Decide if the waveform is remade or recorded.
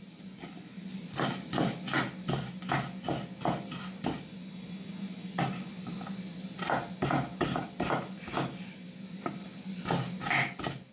recorded